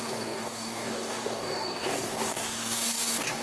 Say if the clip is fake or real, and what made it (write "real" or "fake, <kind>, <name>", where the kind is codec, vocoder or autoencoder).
fake, codec, DAC